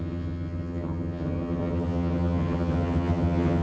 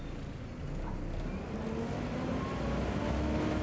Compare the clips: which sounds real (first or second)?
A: second